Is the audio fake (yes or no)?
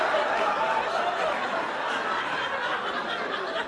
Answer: no